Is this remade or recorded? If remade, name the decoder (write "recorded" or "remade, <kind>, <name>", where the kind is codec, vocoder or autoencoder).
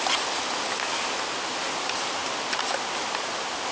recorded